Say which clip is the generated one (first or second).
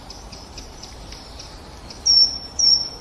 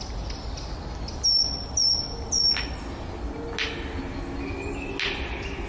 first